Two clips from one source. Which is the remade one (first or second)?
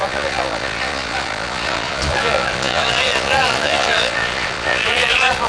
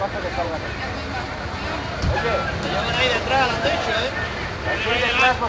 first